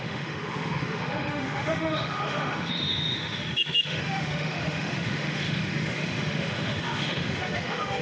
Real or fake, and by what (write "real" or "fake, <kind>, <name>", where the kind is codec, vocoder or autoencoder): fake, autoencoder, DAC-VAE